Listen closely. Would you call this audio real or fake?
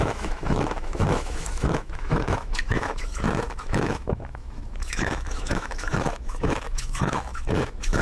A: fake